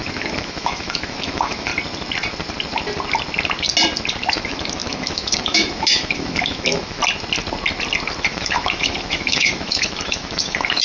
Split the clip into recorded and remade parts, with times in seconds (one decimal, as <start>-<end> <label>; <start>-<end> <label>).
0.0-1.7 remade; 1.7-4.3 recorded; 4.3-7.0 remade; 7.0-8.3 recorded; 8.3-10.8 remade